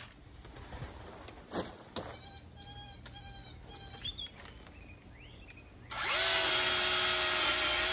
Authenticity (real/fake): real